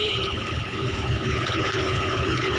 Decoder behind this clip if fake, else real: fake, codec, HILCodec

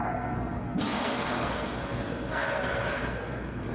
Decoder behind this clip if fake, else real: fake, codec, SNAC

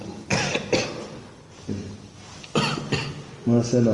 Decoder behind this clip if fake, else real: real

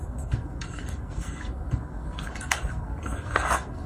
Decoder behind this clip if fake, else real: fake, codec, SNAC